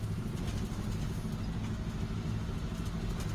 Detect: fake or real real